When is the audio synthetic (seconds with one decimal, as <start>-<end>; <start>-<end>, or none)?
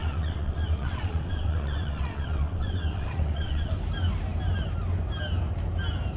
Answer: 0.0-3.7